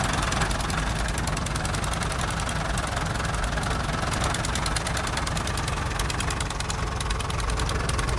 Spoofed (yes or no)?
no